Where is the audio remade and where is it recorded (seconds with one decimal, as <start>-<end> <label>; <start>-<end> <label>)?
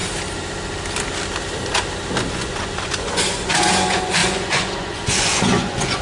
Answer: 0.0-2.3 recorded; 2.3-6.0 remade